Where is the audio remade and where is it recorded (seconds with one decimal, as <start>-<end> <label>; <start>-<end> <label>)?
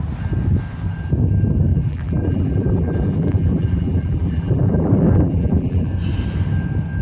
0.0-1.7 recorded; 1.7-5.9 remade; 5.9-7.0 recorded